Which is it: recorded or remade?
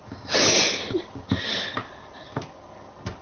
recorded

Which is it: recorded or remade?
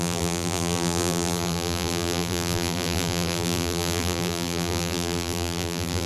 remade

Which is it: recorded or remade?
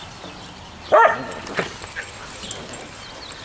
recorded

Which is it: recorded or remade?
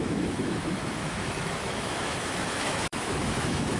remade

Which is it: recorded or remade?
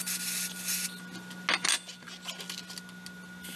recorded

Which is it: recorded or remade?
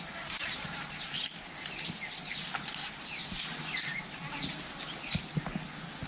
recorded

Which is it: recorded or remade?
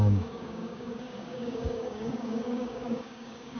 remade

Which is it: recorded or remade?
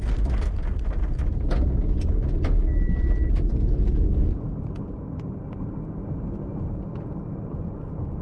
recorded